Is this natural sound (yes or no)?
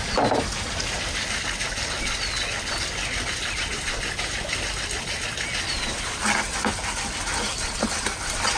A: yes